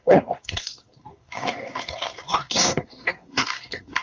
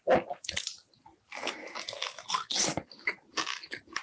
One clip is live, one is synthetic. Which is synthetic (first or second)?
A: first